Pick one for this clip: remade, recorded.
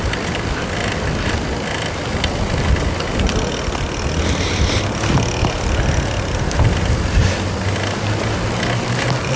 recorded